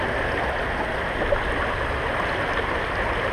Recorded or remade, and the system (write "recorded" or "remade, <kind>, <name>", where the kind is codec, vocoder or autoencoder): recorded